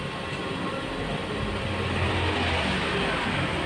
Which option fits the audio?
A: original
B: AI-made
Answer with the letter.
A